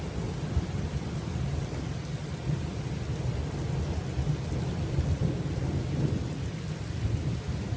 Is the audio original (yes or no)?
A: yes